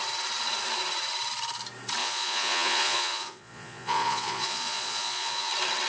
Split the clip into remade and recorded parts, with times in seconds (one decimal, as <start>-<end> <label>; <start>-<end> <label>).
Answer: 0.0-2.0 recorded; 2.0-5.5 remade; 5.5-5.9 recorded